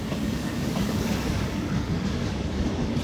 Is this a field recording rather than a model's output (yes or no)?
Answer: no